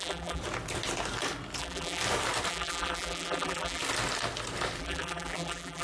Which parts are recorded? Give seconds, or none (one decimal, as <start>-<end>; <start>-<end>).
0.4-1.6; 2.0-2.5; 3.8-4.8